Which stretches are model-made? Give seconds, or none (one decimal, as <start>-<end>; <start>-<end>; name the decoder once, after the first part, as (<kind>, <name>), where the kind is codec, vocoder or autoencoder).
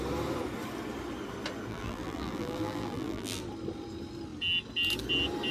1.7-3.4 (vocoder, BigVGAN v2)